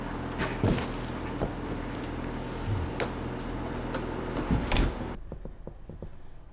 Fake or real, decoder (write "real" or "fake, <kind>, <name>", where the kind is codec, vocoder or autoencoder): real